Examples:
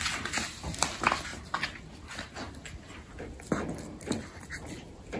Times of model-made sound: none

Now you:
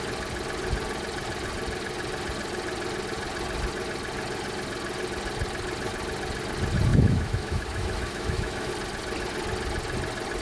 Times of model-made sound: 6.9-8.7

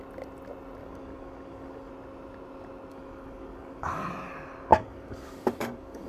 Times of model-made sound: 0.8-1.9; 2.9-4.1; 4.7-6.1

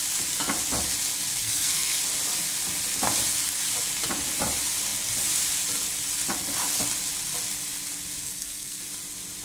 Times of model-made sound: 1.4-2.0; 8.2-8.8

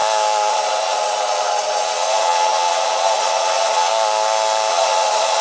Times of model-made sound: 0.5-3.9; 4.7-5.4

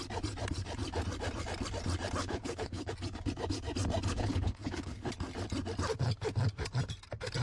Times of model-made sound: 2.2-2.9; 4.1-5.1